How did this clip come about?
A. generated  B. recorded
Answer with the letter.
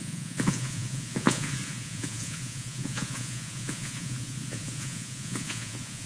A